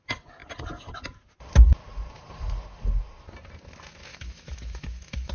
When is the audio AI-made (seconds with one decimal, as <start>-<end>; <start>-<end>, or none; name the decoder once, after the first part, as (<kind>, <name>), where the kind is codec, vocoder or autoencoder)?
4.1-5.3 (autoencoder, DAC-VAE)